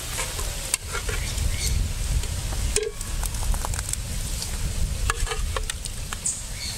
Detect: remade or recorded recorded